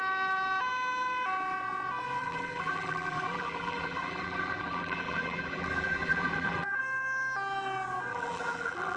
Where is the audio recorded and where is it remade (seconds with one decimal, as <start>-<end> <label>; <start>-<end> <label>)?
0.0-2.2 recorded; 2.2-6.8 remade; 6.8-8.1 recorded; 8.1-9.0 remade